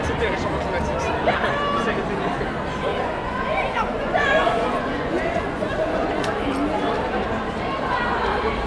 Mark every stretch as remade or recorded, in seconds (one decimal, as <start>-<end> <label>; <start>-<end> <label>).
0.0-2.9 recorded; 2.9-6.2 remade; 6.2-8.7 recorded